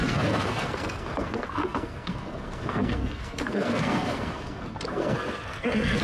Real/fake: fake